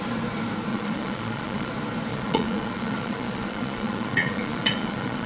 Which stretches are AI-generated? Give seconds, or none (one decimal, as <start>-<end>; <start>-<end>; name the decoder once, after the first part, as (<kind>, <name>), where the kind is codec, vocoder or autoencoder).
0.7-1.7 (vocoder, Vocos); 2.1-5.3